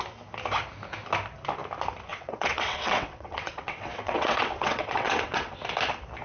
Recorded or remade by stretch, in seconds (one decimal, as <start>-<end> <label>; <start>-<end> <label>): 0.0-2.1 recorded; 2.1-5.6 remade; 5.6-6.2 recorded